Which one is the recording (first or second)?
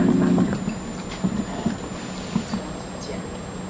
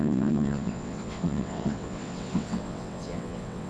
first